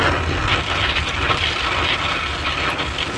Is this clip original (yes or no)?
yes